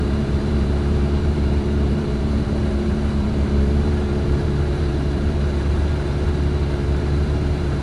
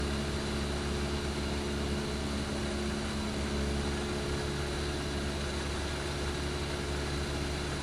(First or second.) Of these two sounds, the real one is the second